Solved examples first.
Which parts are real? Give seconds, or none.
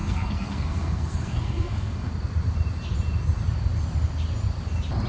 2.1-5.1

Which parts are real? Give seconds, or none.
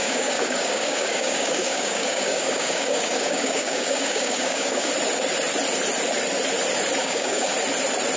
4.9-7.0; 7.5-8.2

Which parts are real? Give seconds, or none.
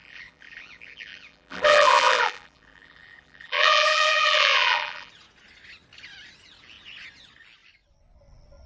5.1-8.7